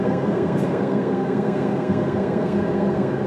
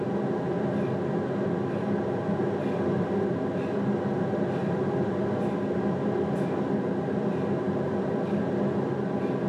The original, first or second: second